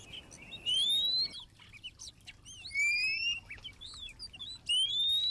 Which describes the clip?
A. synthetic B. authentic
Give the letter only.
B